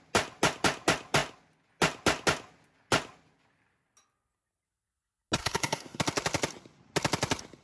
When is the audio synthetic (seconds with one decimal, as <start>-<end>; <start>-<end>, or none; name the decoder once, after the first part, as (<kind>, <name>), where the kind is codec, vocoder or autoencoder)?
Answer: 5.4-6.0 (codec, SNAC)

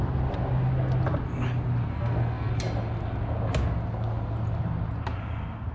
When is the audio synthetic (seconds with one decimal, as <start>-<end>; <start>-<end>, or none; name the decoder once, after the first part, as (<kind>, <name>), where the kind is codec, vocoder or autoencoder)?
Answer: 1.9-2.5 (codec, SNAC)